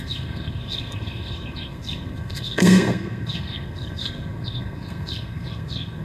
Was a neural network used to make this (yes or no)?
yes